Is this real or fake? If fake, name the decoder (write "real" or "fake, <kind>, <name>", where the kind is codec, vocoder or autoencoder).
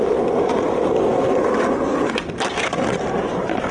real